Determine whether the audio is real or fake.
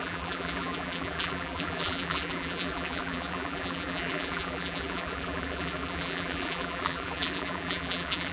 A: fake